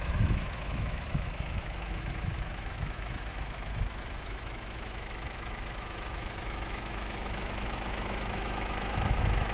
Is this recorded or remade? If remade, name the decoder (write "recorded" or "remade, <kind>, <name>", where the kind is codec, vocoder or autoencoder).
remade, autoencoder, DAC-VAE